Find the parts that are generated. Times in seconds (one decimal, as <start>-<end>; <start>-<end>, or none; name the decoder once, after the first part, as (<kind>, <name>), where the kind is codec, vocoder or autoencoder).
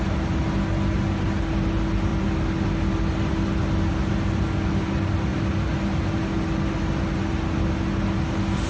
none